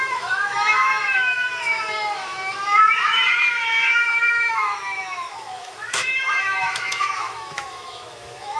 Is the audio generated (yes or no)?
yes